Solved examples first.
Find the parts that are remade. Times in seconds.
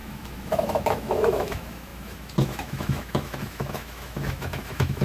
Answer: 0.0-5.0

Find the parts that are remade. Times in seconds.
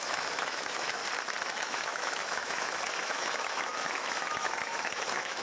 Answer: 0.0-1.0; 1.5-5.4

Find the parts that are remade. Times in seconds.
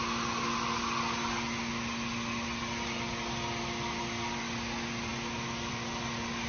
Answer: none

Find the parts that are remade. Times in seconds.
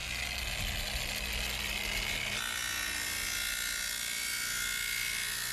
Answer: none